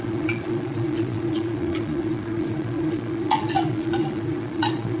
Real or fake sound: fake